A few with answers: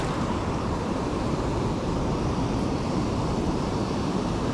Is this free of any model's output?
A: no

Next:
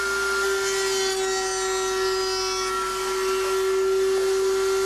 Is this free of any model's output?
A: yes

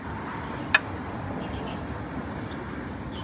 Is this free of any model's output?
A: yes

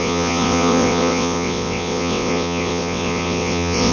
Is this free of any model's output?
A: no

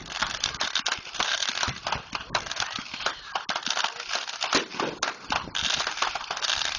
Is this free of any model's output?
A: yes